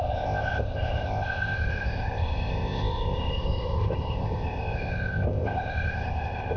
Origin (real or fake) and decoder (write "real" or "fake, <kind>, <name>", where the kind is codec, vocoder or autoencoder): fake, codec, ZipCodec